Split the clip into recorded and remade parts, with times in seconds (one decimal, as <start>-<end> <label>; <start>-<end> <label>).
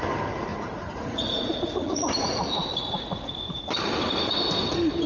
0.0-0.5 recorded; 0.5-3.6 remade; 3.6-5.1 recorded